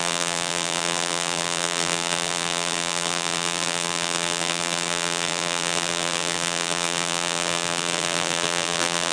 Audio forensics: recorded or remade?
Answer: remade